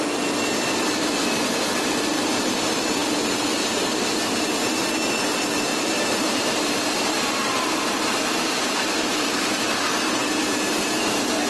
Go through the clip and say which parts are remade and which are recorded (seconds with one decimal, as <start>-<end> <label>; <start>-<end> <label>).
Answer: 0.0-5.7 recorded; 5.7-9.4 remade; 9.4-10.2 recorded; 10.2-11.0 remade; 11.0-11.5 recorded